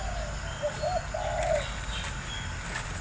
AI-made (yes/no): no